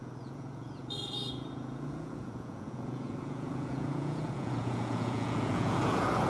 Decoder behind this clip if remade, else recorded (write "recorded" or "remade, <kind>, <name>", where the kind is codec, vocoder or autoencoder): remade, vocoder, Vocos